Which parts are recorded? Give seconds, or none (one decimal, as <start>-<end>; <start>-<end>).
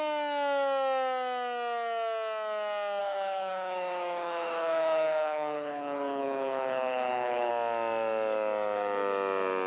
0.0-3.0; 7.5-9.7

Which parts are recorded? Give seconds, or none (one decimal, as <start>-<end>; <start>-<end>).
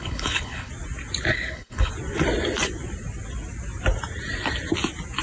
0.7-1.3; 1.9-5.2